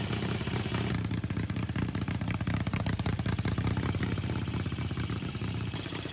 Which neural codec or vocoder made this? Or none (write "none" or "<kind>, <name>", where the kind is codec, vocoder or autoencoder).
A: vocoder, BigVGAN v2